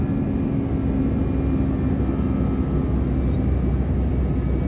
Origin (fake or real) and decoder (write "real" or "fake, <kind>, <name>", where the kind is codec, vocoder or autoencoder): real